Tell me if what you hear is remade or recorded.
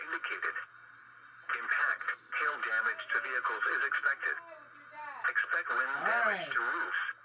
recorded